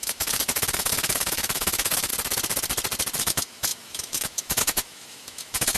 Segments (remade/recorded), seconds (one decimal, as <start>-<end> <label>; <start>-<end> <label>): 0.0-2.1 remade; 2.1-3.2 recorded; 3.2-5.8 remade